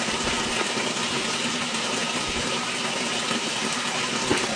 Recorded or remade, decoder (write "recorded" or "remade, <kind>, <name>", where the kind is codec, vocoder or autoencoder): recorded